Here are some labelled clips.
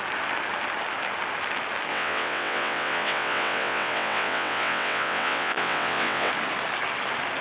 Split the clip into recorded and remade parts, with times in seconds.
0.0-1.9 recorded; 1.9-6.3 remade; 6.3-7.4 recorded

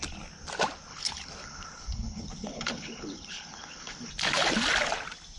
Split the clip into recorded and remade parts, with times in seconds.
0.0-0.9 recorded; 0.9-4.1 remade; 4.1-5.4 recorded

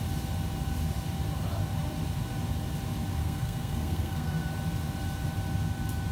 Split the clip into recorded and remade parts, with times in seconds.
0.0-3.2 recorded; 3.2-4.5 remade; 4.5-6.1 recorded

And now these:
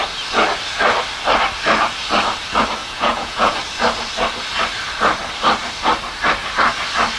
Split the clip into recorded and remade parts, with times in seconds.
0.0-2.8 recorded; 2.8-3.6 remade; 3.6-7.2 recorded